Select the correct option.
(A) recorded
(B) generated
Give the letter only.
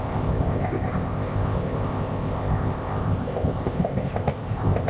B